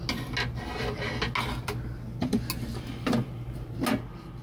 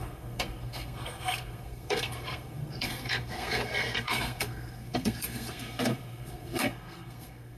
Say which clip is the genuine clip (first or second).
first